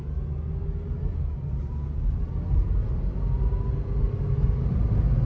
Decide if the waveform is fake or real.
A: real